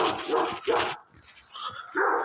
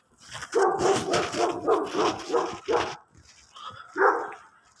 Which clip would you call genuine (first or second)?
first